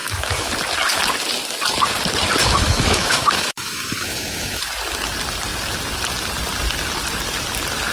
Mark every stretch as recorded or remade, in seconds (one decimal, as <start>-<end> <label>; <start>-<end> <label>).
0.0-0.5 remade; 0.5-2.4 recorded; 2.4-4.6 remade; 4.6-7.9 recorded